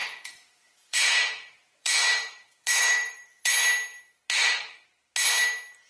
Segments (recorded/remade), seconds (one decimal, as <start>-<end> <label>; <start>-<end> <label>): 0.0-3.5 remade; 3.5-5.9 recorded